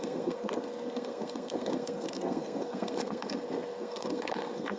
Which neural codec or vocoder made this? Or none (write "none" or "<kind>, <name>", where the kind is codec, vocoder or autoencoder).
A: codec, SNAC